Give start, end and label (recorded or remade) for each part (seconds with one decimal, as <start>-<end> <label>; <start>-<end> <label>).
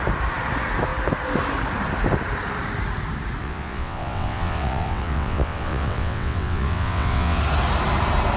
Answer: 0.0-3.4 recorded; 3.4-7.4 remade; 7.4-8.4 recorded